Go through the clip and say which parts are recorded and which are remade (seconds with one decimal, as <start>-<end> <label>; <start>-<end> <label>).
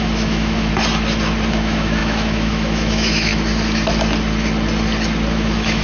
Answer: 0.0-0.7 remade; 0.7-1.5 recorded; 1.5-3.3 remade; 3.3-5.3 recorded; 5.3-5.8 remade